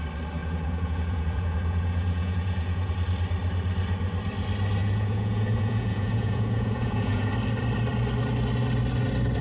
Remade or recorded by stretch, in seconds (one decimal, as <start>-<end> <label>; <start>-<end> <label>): 0.0-0.4 recorded; 0.4-2.9 remade; 2.9-4.8 recorded; 4.8-7.3 remade; 7.3-9.4 recorded